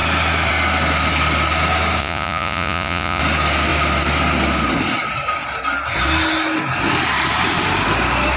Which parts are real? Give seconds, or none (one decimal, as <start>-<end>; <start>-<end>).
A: 0.0-2.0; 3.2-8.4